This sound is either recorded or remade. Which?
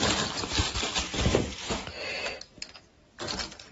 remade